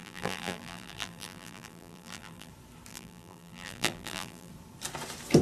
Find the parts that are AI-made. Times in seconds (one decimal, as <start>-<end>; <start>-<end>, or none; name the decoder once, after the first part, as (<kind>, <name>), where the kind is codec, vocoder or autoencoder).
0.0-2.5 (vocoder, BigVGAN v2); 2.9-4.5